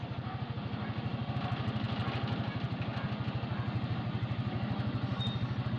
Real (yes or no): yes